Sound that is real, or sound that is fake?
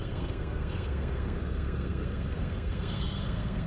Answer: fake